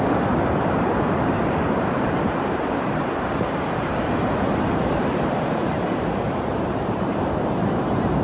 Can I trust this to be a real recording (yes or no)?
no